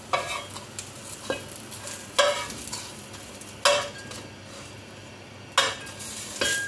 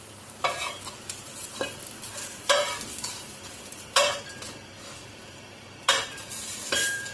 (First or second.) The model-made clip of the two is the second